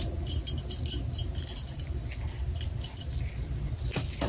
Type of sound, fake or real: real